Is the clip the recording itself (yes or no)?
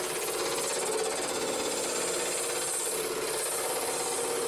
yes